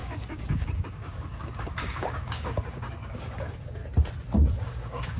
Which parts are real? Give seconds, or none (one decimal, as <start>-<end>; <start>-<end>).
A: 3.8-4.6